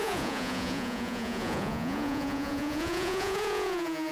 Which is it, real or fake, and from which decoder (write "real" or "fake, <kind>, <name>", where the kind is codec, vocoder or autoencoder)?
fake, vocoder, Vocos